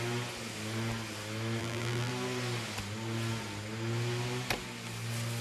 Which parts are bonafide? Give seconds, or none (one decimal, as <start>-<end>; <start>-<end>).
0.0-1.6; 2.1-5.4